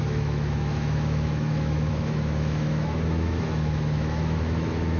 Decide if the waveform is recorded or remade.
remade